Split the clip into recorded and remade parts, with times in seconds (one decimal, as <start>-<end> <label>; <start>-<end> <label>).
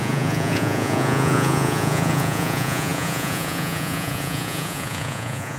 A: 0.0-5.6 remade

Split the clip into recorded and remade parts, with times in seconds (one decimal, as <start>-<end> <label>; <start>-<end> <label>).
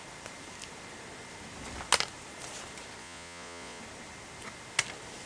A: 0.0-3.0 recorded; 3.0-3.8 remade; 3.8-5.3 recorded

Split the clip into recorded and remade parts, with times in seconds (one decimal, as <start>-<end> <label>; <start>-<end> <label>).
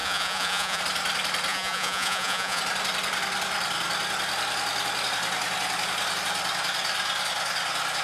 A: 0.0-0.8 remade; 0.8-1.5 recorded; 1.5-2.6 remade; 2.6-8.0 recorded